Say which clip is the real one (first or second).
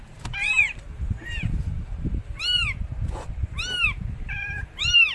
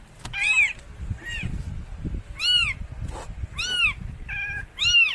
second